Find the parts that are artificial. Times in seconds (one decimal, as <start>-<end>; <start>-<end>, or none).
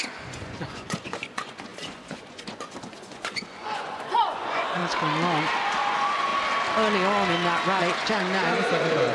0.0-4.8; 5.8-6.3; 7.8-9.1